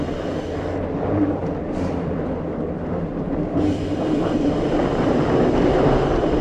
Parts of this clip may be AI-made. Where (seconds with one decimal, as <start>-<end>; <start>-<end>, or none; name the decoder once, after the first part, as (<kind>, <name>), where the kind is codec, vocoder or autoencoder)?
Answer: 1.4-5.2 (vocoder, BigVGAN v2)